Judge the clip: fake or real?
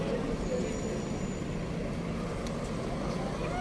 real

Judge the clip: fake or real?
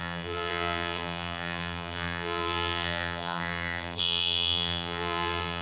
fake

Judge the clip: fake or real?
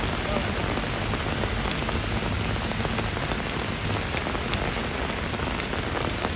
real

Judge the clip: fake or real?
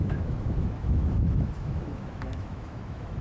fake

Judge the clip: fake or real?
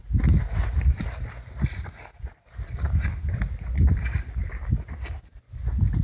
real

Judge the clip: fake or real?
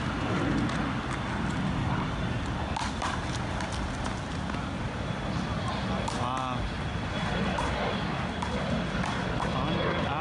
real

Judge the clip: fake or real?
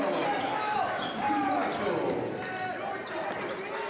real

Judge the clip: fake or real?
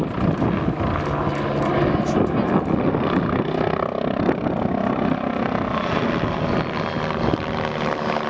real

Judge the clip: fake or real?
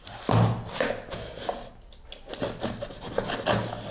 real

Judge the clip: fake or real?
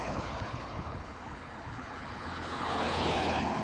fake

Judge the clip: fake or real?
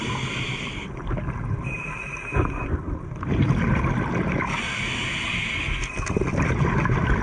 real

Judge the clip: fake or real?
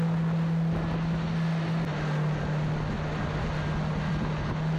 real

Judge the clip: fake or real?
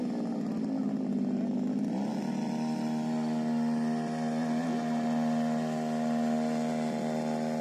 real